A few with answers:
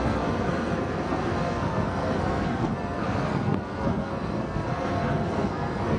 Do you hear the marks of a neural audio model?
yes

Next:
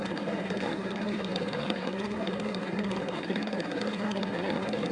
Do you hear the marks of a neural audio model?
yes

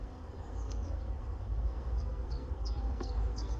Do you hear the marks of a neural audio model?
yes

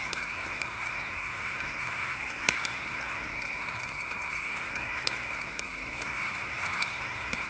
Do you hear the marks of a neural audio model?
yes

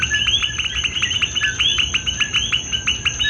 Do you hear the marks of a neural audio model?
no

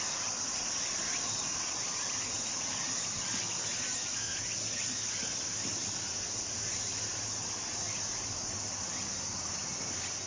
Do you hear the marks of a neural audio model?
no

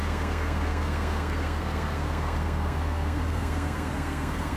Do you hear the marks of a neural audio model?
yes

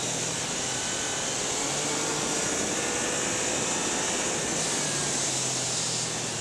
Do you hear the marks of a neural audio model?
no